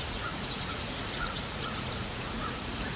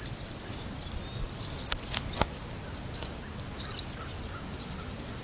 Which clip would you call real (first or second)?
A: second